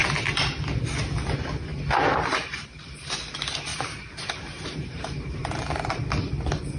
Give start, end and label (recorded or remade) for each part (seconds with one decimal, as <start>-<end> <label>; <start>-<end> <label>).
0.0-3.7 recorded; 3.7-6.1 remade; 6.1-6.8 recorded